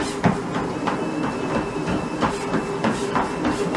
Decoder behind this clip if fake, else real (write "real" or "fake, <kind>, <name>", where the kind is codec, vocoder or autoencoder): real